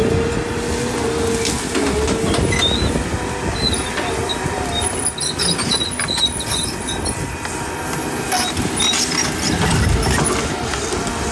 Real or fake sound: real